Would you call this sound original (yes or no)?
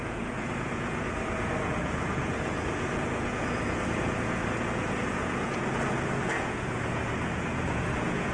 no